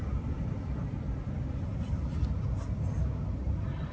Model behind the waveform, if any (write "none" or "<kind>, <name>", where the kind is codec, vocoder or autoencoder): none